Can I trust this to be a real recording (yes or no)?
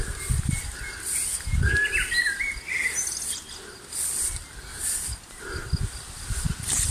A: yes